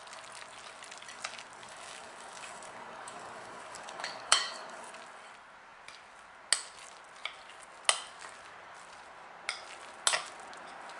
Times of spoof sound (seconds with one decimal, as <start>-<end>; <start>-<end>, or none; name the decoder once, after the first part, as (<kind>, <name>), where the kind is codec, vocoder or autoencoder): 1.6-4.9 (codec, DAC)